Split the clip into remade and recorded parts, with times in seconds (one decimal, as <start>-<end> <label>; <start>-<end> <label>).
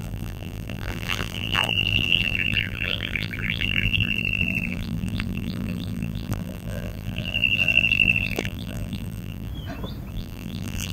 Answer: 0.0-9.5 remade; 9.5-10.1 recorded; 10.1-10.9 remade